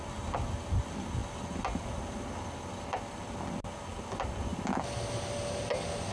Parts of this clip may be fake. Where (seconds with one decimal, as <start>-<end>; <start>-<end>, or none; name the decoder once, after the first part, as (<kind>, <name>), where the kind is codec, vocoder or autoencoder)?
none